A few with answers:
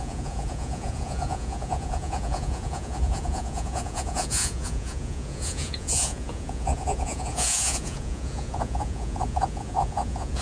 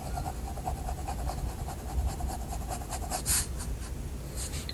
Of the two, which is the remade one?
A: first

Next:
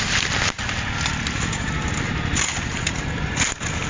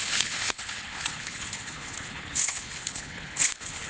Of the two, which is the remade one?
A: second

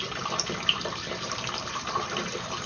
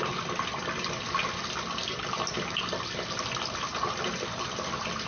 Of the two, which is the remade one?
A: first